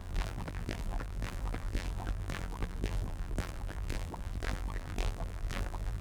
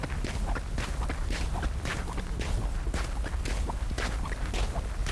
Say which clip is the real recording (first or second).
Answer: second